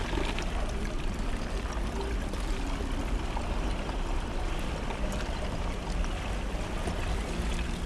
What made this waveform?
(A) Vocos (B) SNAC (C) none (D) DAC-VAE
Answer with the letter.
C